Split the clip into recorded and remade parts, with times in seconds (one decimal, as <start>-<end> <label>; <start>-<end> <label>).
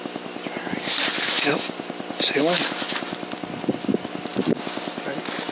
0.0-5.5 recorded